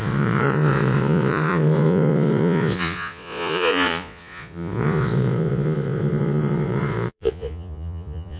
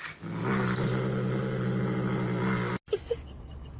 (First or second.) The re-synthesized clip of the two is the first